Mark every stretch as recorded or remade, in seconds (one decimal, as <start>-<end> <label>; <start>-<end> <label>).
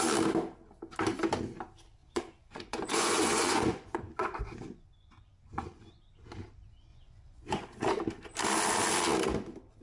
0.0-2.0 recorded; 2.0-6.0 remade; 6.0-6.9 recorded; 6.9-7.9 remade; 7.9-9.8 recorded